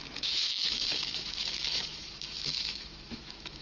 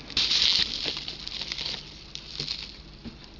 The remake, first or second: first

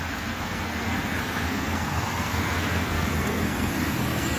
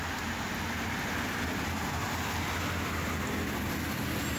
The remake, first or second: first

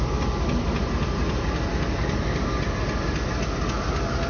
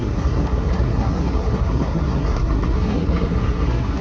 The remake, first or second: second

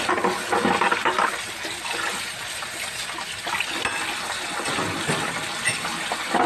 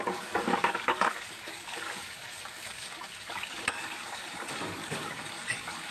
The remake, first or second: second